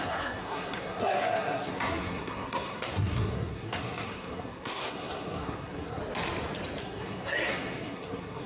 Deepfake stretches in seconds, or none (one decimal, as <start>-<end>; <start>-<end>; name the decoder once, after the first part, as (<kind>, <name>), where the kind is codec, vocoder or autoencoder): 0.0-6.0 (codec, SNAC); 6.8-8.5